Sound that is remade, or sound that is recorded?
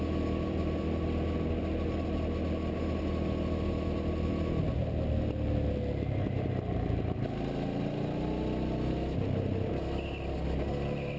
recorded